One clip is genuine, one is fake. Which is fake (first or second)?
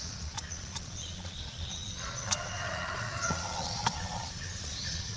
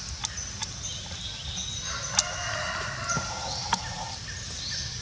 first